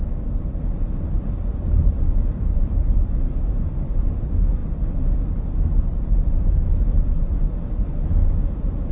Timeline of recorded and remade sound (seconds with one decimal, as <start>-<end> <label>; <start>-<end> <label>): 0.0-8.9 recorded

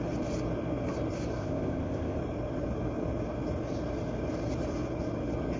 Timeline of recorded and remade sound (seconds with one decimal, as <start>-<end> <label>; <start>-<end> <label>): 0.0-1.4 recorded; 1.4-2.2 remade; 2.2-5.6 recorded

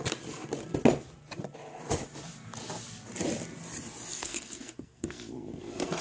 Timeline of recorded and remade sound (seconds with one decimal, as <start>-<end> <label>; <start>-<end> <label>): 0.0-4.1 recorded; 4.1-6.0 remade

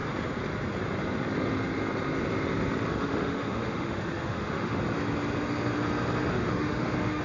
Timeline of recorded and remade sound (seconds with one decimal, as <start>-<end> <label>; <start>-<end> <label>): 0.0-2.9 recorded; 2.9-4.8 remade; 4.8-6.3 recorded; 6.3-7.2 remade

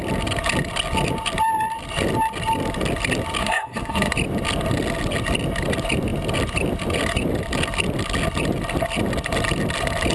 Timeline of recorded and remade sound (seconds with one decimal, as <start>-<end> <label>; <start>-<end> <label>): 0.0-3.4 recorded; 3.4-4.1 remade; 4.1-10.1 recorded